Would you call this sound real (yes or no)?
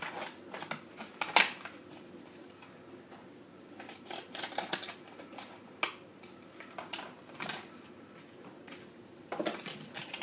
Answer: yes